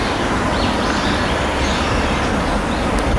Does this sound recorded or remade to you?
recorded